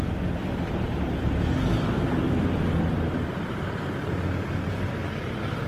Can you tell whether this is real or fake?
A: fake